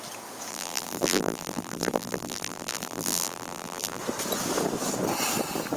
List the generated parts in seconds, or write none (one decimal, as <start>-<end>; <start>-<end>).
0.5-4.0